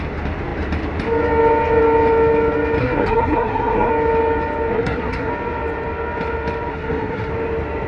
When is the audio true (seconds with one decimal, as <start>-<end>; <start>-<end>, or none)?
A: 0.0-2.8; 3.9-4.7; 5.3-6.7; 7.3-7.9